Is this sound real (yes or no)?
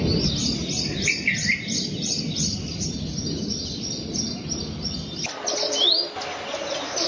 yes